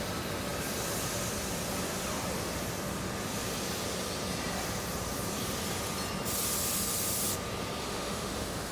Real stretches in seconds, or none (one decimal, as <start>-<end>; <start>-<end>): 0.0-7.8